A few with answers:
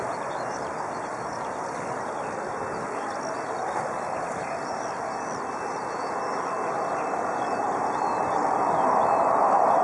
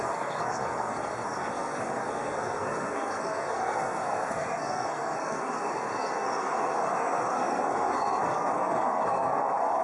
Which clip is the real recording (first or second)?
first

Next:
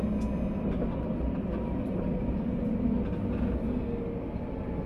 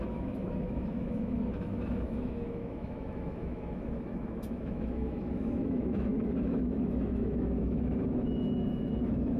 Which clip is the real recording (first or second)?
first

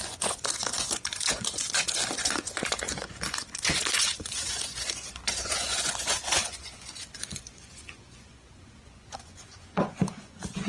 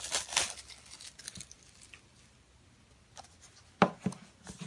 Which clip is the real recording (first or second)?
second